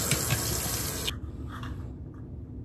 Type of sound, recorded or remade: recorded